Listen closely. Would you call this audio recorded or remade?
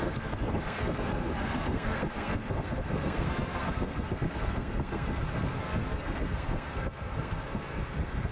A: remade